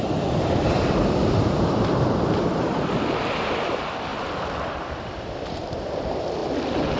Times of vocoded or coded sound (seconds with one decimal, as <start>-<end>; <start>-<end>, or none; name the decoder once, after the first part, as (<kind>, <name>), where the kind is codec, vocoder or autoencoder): 0.0-4.1 (vocoder, BigVGAN v2); 4.7-6.4